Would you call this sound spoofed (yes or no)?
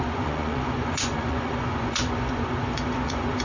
yes